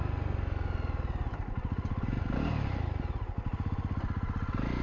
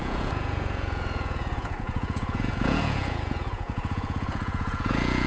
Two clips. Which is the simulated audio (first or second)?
second